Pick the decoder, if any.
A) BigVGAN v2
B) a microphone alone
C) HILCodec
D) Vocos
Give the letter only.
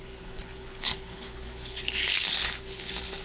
C